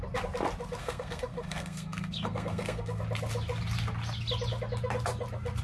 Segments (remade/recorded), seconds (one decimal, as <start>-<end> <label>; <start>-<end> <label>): 0.0-0.8 recorded; 0.8-3.0 remade; 3.0-5.6 recorded